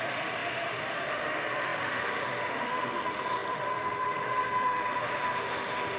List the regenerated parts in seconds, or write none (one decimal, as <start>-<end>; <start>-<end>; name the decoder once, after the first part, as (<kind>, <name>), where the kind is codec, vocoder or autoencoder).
0.0-6.0 (autoencoder, DAC-VAE)